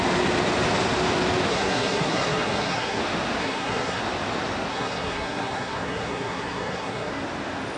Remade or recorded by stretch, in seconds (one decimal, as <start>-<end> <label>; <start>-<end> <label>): 0.0-1.5 recorded; 1.5-3.0 remade; 3.0-3.4 recorded; 3.4-4.0 remade; 4.0-4.7 recorded; 4.7-7.1 remade; 7.1-7.8 recorded

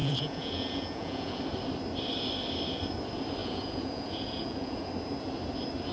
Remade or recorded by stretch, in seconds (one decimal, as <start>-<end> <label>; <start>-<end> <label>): 0.0-1.4 remade; 1.4-3.4 recorded; 3.4-4.9 remade; 4.9-5.9 recorded